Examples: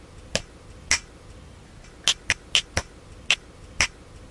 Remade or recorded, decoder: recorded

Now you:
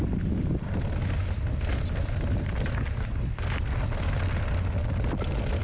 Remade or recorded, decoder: recorded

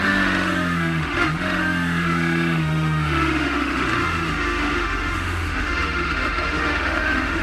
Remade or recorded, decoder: remade, autoencoder, DAC-VAE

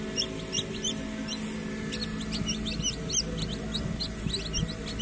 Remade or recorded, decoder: recorded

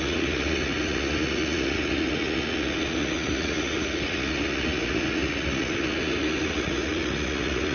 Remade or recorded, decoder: remade, vocoder, Vocos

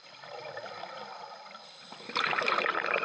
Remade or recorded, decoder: recorded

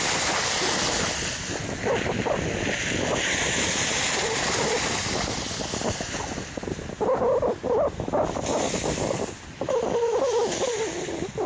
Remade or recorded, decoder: recorded